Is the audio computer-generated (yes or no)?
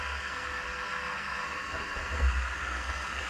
yes